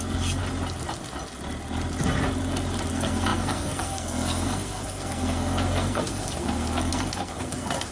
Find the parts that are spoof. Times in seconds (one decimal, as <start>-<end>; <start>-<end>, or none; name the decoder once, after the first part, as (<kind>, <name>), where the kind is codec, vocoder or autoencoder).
0.0-0.4 (codec, SNAC); 2.9-7.9